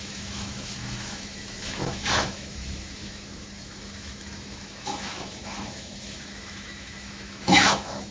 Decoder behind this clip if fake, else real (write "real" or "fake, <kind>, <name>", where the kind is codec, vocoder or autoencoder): fake, autoencoder, DAC-VAE